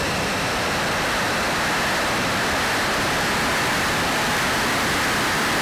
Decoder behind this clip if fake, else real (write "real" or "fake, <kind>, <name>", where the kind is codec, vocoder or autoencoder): real